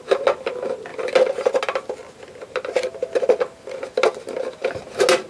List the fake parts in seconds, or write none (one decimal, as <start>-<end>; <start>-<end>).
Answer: none